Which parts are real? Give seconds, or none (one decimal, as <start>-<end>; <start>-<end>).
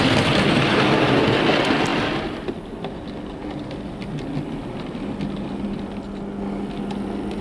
0.0-7.4